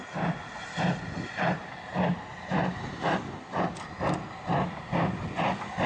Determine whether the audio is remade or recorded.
recorded